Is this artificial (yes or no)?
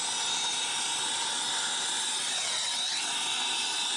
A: no